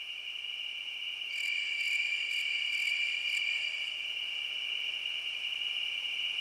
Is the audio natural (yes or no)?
yes